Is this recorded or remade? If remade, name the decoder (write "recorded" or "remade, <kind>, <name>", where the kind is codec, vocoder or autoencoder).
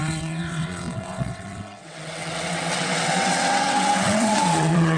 remade, vocoder, WaveNeXt